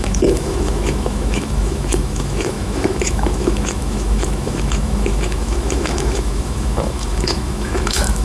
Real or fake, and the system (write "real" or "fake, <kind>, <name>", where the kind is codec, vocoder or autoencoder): fake, autoencoder, DAC-VAE